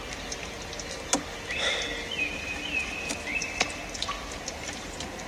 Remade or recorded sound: recorded